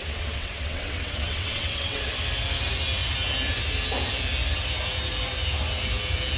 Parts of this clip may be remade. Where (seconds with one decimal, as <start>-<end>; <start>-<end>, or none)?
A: 0.0-2.1